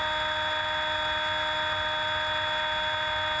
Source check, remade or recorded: recorded